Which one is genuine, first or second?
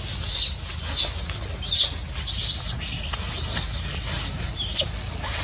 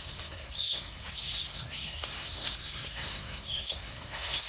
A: first